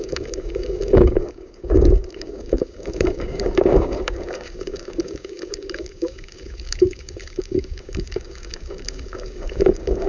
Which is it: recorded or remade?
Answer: remade